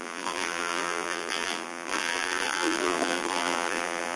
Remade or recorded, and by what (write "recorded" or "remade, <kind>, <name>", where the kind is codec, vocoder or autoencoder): remade, vocoder, BigVGAN v2